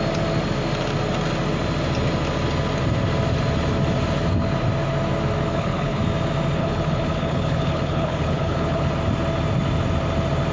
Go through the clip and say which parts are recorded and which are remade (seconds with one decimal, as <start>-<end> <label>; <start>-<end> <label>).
0.0-5.5 recorded; 5.5-6.0 remade; 6.0-6.6 recorded; 6.6-8.9 remade; 8.9-10.5 recorded